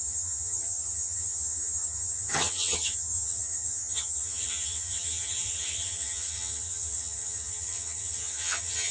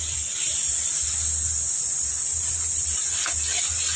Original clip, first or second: second